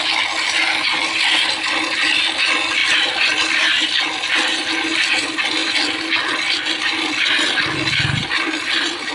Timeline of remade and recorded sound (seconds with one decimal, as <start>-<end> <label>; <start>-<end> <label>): 0.0-9.1 recorded